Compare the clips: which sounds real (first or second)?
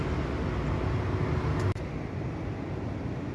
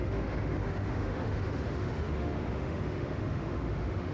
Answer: first